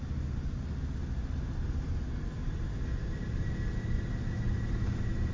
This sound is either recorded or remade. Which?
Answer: recorded